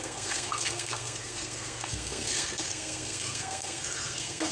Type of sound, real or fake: fake